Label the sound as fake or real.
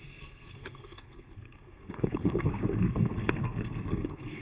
fake